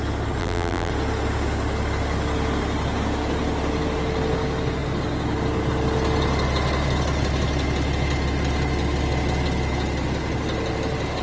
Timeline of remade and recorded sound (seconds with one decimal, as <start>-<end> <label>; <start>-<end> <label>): 0.0-0.4 recorded; 0.4-0.9 remade; 0.9-11.2 recorded